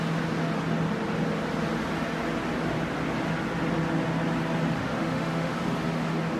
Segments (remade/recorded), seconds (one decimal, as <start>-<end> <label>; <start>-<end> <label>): 0.0-4.8 recorded; 4.8-5.5 remade; 5.5-6.4 recorded